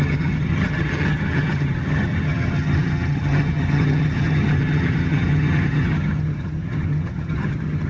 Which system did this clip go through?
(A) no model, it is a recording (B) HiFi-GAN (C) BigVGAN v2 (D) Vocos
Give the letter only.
B